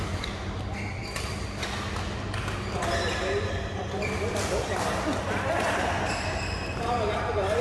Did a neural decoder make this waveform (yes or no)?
no